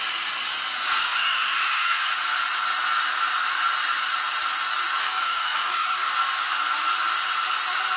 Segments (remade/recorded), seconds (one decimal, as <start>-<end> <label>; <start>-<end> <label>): 0.0-1.0 recorded; 1.0-2.1 remade; 2.1-5.0 recorded; 5.0-6.1 remade; 6.1-8.0 recorded